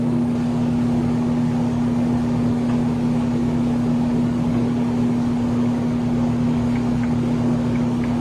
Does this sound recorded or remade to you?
remade